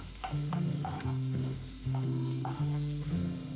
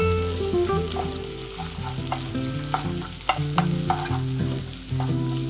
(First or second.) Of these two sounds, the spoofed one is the first